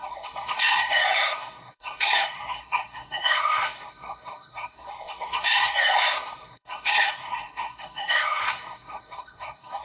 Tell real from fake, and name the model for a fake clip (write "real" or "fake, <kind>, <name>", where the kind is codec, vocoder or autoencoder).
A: fake, codec, SNAC